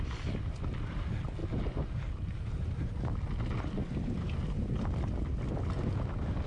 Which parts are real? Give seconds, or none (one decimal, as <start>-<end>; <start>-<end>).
0.0-6.5